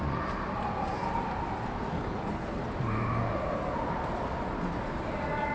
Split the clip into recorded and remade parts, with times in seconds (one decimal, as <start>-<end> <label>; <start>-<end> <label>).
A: 0.0-1.9 recorded; 1.9-2.6 remade; 2.6-5.5 recorded